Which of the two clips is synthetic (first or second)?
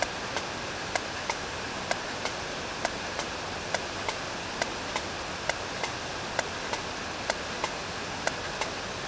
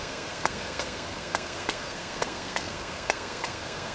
second